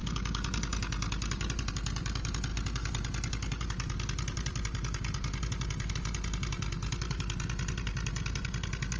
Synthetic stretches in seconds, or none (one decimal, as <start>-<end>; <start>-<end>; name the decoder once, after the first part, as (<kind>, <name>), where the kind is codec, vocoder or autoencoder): none